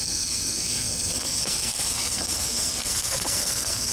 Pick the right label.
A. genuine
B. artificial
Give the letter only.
B